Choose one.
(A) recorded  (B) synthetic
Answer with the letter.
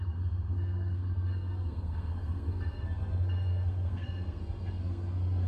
B